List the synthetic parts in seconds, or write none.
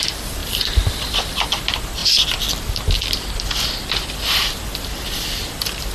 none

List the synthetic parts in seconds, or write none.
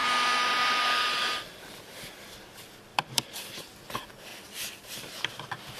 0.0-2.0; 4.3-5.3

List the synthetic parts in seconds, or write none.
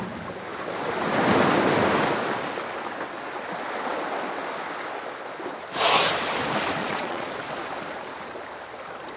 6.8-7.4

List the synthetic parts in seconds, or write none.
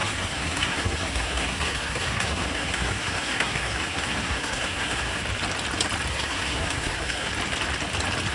0.0-5.2; 6.1-7.3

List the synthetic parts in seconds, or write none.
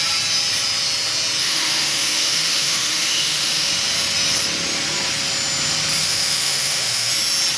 1.4-3.7; 6.0-7.1